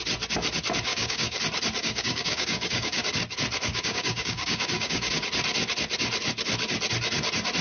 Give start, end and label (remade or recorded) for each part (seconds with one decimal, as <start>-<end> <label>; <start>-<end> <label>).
0.0-0.9 recorded; 0.9-1.4 remade; 1.4-1.8 recorded; 1.8-3.0 remade; 3.0-3.7 recorded; 3.7-5.1 remade; 5.1-7.6 recorded